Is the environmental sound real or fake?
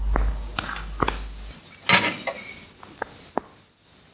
real